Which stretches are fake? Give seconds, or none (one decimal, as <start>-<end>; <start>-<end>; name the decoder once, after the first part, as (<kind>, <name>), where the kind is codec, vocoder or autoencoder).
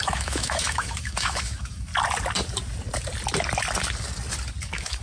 0.0-1.9 (autoencoder, DAC-VAE); 4.6-5.0